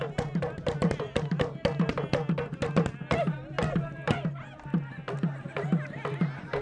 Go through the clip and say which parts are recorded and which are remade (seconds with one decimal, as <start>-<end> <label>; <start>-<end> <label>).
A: 0.0-6.6 recorded